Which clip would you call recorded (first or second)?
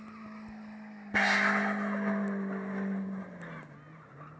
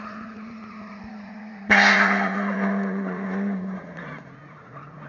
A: first